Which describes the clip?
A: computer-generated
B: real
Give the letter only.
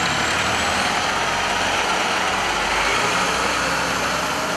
B